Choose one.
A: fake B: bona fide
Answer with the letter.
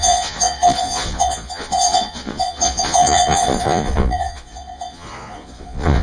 A